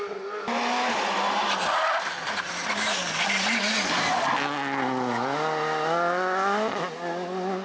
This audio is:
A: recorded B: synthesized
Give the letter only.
A